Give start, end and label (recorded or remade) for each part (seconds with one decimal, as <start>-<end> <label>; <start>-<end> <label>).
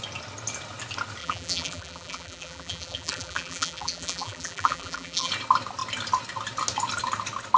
0.0-1.2 recorded; 1.2-5.3 remade; 5.3-7.6 recorded